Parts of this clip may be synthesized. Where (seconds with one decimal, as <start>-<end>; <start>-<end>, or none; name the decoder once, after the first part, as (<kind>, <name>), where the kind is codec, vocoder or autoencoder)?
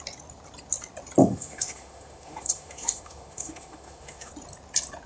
1.2-4.3 (autoencoder, DAC-VAE)